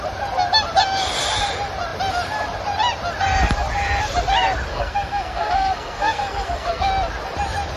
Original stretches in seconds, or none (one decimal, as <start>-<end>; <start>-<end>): 0.0-4.7; 6.9-7.8